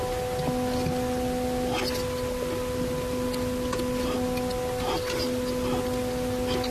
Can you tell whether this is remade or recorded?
recorded